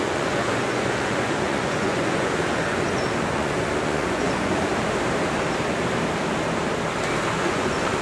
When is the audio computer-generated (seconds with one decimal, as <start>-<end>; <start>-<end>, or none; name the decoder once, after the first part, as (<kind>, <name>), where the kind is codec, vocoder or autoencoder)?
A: 0.0-4.7 (vocoder, Vocos); 7.3-8.0